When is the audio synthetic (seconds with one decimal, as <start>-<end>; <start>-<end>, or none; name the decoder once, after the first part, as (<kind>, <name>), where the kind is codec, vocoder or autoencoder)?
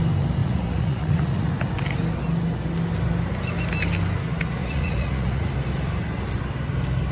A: 0.4-1.5 (vocoder, Vocos); 4.6-5.5